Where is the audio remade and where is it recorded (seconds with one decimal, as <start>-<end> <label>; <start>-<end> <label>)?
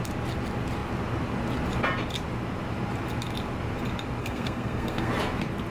0.0-4.2 recorded; 4.2-5.1 remade; 5.1-5.7 recorded